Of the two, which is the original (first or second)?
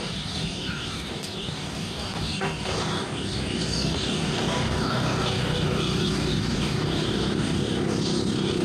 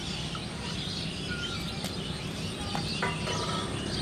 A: second